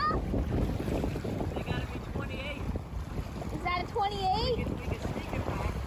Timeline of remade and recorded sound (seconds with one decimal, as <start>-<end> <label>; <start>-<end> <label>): 0.0-5.9 recorded